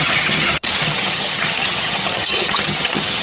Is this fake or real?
fake